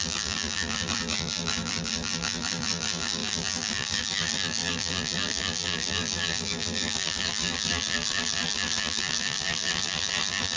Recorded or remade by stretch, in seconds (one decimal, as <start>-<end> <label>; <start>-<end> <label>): 0.0-10.6 remade